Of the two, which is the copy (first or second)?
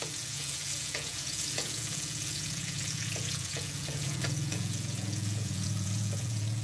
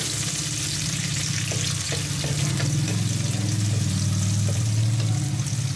first